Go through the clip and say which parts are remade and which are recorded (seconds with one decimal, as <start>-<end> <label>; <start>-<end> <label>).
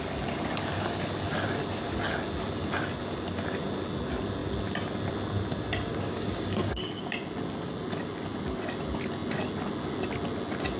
0.0-5.9 recorded; 5.9-7.1 remade; 7.1-10.8 recorded